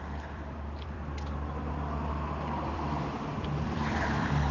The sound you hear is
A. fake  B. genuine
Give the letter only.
A